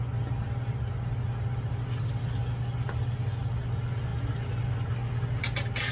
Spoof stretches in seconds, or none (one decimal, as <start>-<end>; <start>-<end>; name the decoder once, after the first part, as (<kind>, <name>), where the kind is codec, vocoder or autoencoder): none